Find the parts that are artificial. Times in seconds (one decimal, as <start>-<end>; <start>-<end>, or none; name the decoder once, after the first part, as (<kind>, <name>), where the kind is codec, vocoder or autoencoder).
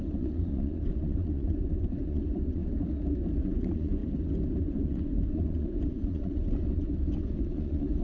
0.0-2.6 (vocoder, Vocos); 3.4-4.0; 4.6-8.0